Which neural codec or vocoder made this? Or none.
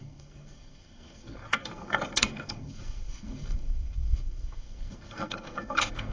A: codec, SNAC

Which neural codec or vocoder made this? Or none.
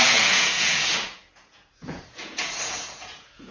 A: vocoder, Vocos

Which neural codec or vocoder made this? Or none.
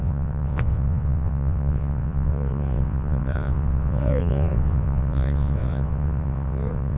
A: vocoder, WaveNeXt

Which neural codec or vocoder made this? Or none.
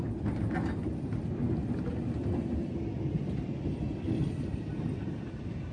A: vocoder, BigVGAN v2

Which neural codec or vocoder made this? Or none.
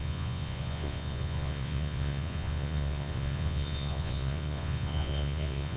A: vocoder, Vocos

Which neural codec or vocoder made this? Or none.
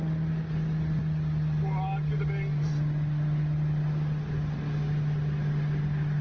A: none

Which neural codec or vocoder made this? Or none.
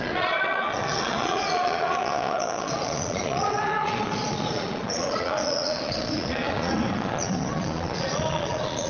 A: vocoder, Vocos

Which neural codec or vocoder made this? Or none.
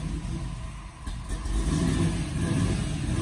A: none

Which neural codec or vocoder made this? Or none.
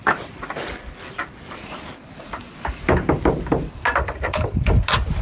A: none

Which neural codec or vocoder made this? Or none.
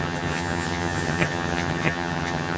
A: vocoder, HiFi-GAN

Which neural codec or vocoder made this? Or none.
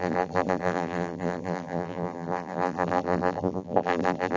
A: vocoder, BigVGAN v2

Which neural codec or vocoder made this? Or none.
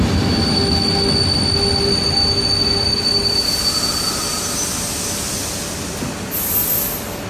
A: none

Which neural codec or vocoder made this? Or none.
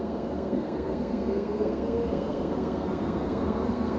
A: codec, SNAC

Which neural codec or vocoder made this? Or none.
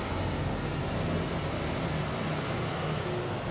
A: none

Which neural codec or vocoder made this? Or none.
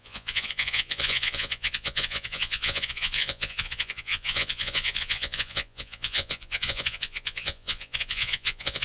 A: vocoder, Vocos